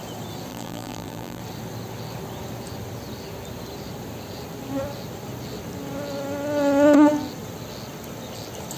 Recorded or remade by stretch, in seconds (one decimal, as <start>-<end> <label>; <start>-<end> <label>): 0.0-0.5 recorded; 0.5-1.4 remade; 1.4-8.8 recorded